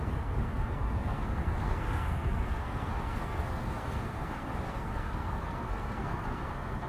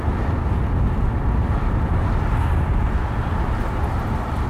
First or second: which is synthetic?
first